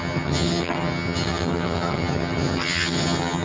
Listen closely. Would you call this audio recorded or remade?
remade